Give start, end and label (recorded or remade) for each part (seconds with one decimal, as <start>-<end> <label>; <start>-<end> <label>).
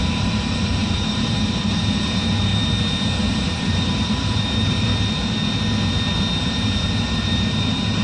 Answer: 0.0-2.5 remade; 2.5-3.4 recorded; 3.4-4.9 remade; 4.9-6.4 recorded; 6.4-8.0 remade